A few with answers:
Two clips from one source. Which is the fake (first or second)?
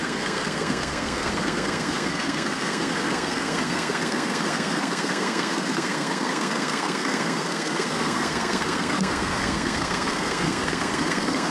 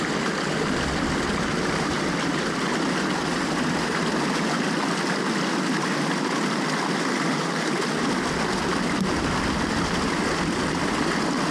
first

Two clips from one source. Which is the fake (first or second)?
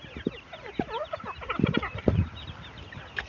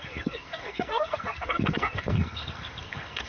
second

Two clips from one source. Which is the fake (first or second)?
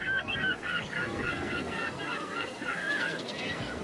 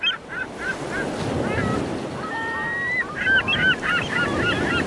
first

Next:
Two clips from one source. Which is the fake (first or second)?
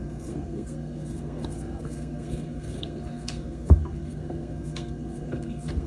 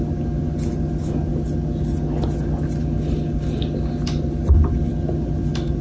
first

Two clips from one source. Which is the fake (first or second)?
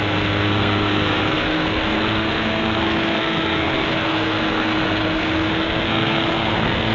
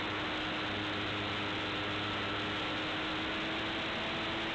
first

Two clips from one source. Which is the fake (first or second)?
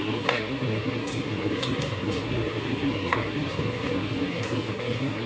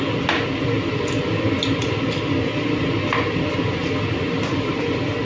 first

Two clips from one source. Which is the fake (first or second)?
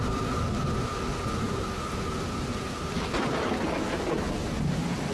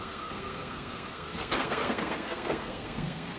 second